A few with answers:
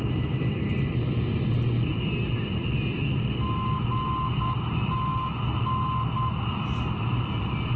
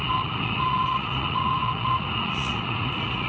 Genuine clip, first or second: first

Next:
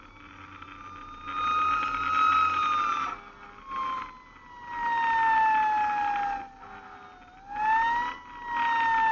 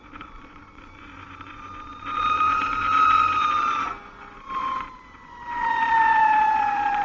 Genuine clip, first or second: first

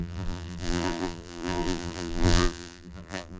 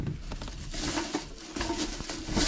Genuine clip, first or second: second